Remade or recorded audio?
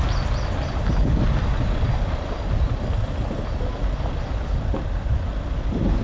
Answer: recorded